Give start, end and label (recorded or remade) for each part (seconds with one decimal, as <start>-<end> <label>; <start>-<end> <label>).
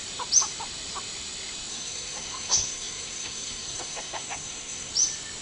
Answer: 0.0-1.7 recorded; 1.7-4.9 remade; 4.9-5.4 recorded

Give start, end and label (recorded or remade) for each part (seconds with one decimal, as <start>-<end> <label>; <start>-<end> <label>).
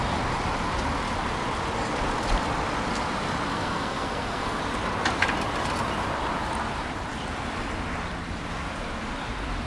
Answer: 0.0-3.5 recorded; 3.5-4.6 remade; 4.6-9.7 recorded